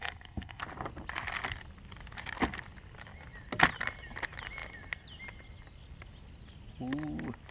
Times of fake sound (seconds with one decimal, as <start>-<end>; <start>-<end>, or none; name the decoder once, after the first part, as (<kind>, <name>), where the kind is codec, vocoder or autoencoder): 0.0-0.6 (codec, SNAC)